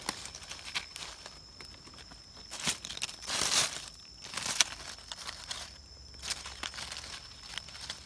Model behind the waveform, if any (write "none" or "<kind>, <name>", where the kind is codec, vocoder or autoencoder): none